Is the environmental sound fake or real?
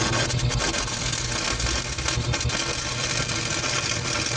real